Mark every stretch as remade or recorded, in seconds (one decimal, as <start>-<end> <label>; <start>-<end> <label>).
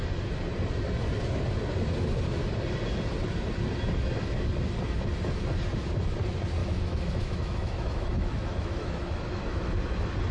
0.0-6.6 recorded; 6.6-9.7 remade; 9.7-10.3 recorded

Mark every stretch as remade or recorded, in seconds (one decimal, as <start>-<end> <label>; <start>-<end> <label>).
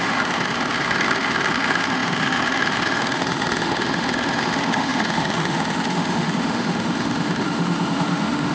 0.0-8.5 remade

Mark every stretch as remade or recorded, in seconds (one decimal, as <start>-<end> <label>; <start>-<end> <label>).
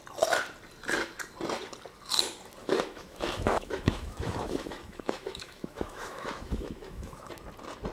0.0-2.6 recorded; 2.6-7.3 remade; 7.3-7.9 recorded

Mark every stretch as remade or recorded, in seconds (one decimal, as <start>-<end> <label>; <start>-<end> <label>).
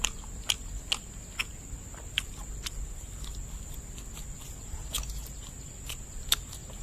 0.0-6.8 recorded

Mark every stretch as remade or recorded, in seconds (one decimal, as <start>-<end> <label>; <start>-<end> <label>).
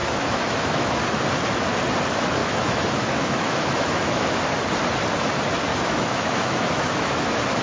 0.0-1.0 remade; 1.0-2.4 recorded; 2.4-4.3 remade; 4.3-5.7 recorded; 5.7-7.6 remade